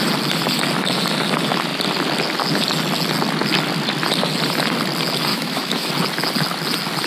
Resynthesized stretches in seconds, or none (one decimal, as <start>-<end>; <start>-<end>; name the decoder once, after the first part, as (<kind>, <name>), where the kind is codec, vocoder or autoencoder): 5.3-5.9 (autoencoder, DAC-VAE)